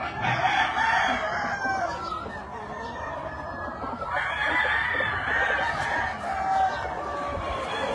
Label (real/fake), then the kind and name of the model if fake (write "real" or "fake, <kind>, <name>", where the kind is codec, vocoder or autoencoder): real